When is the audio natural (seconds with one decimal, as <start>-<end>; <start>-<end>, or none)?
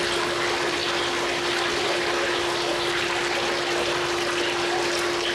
none